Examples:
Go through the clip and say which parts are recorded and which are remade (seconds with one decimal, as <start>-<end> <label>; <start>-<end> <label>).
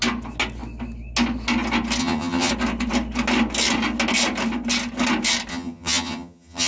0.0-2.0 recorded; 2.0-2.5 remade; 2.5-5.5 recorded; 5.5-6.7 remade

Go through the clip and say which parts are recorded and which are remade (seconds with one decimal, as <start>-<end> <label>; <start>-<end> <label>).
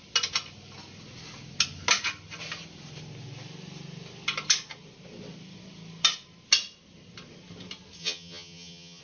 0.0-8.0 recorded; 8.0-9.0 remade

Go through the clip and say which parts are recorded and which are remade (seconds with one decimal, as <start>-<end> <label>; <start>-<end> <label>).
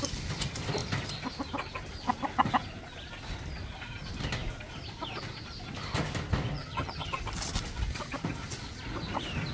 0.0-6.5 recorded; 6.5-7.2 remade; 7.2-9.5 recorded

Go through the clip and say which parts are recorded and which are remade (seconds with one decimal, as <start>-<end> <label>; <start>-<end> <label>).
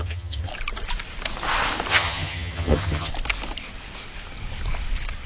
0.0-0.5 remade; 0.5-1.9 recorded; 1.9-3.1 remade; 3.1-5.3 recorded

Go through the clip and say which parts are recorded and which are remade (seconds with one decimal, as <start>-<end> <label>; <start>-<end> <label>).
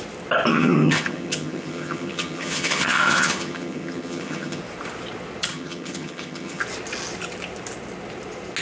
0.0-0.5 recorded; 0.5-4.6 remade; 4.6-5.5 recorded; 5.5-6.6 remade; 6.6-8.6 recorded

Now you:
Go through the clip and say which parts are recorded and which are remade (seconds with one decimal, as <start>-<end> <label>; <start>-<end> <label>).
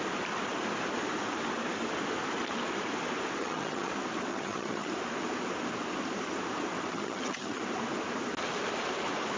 0.0-3.4 recorded; 3.4-3.9 remade; 3.9-4.3 recorded; 4.3-4.9 remade; 4.9-6.9 recorded; 6.9-7.6 remade; 7.6-9.4 recorded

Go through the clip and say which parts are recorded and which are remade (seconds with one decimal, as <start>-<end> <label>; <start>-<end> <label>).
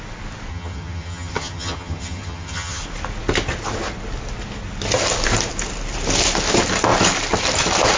0.0-0.5 recorded; 0.5-2.8 remade; 2.8-8.0 recorded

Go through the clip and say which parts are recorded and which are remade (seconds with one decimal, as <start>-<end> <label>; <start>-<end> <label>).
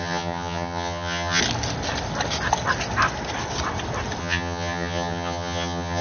0.0-1.4 remade; 1.4-4.2 recorded; 4.2-6.0 remade